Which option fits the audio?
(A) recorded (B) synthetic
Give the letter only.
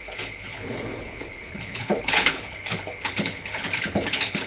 B